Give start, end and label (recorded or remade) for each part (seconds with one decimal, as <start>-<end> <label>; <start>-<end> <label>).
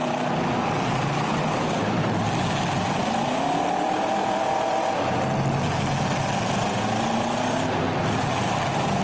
0.0-9.0 recorded